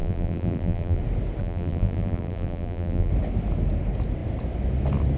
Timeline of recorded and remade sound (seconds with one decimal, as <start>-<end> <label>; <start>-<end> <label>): 0.0-1.0 remade; 1.0-1.4 recorded; 1.4-3.1 remade; 3.1-5.2 recorded